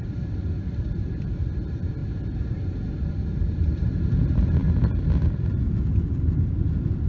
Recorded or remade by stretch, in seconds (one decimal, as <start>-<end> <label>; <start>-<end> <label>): 0.0-2.0 remade; 2.0-2.9 recorded; 2.9-7.1 remade